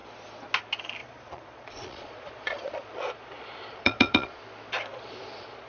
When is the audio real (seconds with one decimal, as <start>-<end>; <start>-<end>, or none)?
0.0-1.0; 4.4-4.9